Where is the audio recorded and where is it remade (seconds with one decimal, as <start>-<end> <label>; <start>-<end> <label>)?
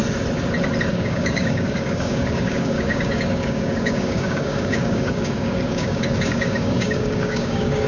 0.0-0.9 recorded; 0.9-7.9 remade